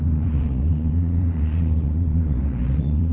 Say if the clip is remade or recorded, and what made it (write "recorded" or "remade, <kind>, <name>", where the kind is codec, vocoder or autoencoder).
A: remade, vocoder, Vocos